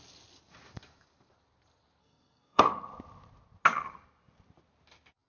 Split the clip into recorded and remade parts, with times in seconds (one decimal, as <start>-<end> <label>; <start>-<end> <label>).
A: 0.0-2.0 recorded; 2.0-2.6 remade; 2.6-5.3 recorded